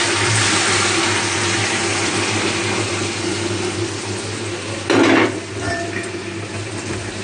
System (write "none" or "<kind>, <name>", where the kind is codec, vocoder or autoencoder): none